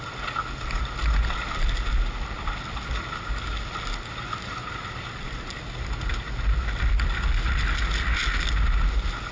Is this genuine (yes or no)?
yes